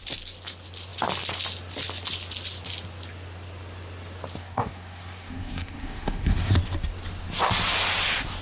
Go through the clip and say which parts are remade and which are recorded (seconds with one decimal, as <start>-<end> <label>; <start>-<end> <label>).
0.0-4.4 recorded; 4.4-6.5 remade; 6.5-8.4 recorded